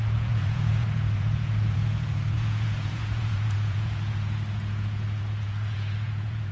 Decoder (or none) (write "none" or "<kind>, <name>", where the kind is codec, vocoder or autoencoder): vocoder, Vocos